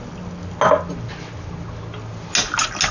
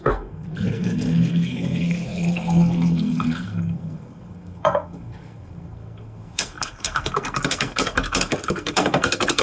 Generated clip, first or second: second